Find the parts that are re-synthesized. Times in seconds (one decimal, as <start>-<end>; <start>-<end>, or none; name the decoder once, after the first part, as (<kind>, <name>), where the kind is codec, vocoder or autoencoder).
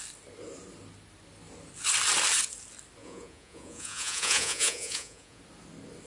3.0-5.4 (vocoder, Vocos)